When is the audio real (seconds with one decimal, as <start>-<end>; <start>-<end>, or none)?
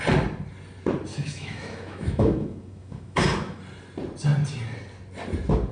0.0-1.1; 3.6-5.7